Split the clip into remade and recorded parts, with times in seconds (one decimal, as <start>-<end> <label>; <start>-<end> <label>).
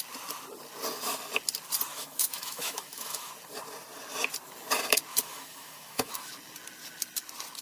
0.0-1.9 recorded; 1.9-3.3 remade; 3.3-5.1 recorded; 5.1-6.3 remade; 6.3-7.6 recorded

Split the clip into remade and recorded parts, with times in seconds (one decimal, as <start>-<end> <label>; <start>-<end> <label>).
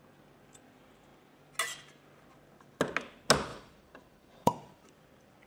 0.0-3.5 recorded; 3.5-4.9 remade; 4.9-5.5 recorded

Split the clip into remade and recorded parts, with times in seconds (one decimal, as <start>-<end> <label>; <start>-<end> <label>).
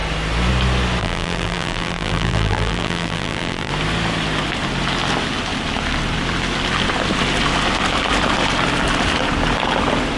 0.0-1.0 recorded; 1.0-3.7 remade; 3.7-10.2 recorded